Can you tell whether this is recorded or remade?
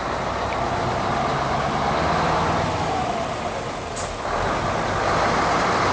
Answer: recorded